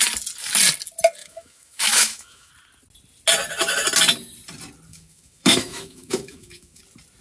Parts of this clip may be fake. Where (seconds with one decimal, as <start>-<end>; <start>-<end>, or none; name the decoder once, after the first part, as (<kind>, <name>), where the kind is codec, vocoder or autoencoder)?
1.2-2.5 (autoencoder, DAC-VAE); 4.9-6.8

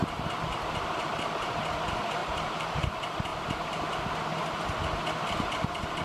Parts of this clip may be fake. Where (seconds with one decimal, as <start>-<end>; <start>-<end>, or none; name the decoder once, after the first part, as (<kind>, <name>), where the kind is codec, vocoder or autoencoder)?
2.2-2.9 (vocoder, BigVGAN v2); 3.3-3.8

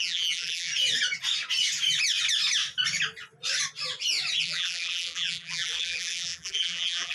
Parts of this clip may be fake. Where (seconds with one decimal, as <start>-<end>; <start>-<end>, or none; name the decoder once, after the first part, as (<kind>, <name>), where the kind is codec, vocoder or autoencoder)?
0.0-0.7 (vocoder, BigVGAN v2); 4.4-7.1

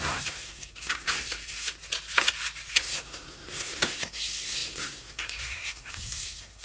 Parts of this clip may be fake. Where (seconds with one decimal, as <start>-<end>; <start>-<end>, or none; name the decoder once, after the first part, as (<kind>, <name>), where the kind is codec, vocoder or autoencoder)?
0.0-1.7 (codec, SNAC); 2.7-6.6